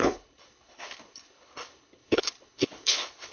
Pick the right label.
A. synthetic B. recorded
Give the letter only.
A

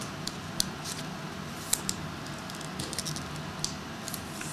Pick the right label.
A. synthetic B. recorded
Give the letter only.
B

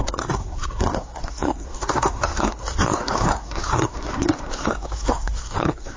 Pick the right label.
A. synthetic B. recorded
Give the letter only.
A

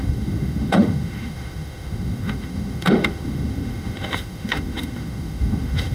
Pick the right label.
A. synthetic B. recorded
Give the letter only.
A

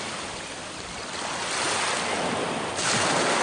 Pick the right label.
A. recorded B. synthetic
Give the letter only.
A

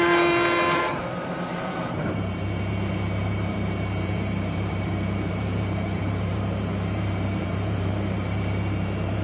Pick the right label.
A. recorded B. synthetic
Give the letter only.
B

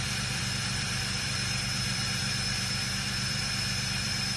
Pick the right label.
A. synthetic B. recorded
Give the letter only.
A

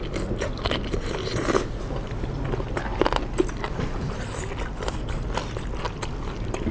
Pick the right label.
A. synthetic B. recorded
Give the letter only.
B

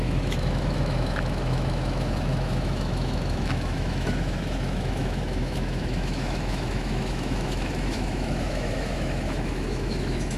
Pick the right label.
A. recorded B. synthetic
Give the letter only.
B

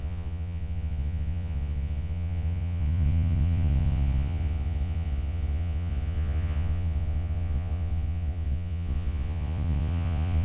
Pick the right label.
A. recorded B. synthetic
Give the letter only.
B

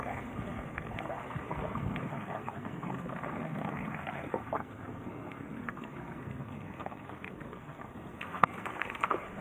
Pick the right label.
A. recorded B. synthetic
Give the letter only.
B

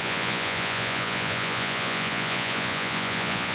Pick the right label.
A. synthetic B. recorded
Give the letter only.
A